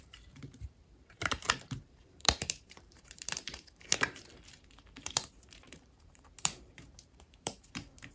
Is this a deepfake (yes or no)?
yes